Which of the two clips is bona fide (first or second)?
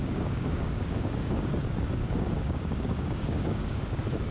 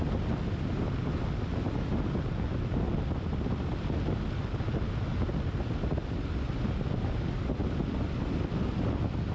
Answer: second